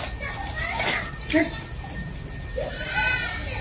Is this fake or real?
real